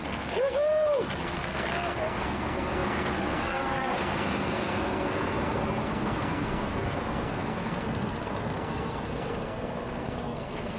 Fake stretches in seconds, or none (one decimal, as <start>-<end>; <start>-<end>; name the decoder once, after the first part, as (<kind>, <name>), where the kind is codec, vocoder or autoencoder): 0.0-10.8 (codec, SNAC)